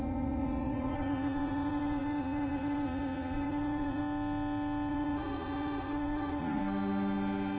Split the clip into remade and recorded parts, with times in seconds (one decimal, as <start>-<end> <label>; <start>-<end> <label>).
0.0-4.0 remade; 4.0-4.9 recorded; 4.9-6.6 remade; 6.6-7.6 recorded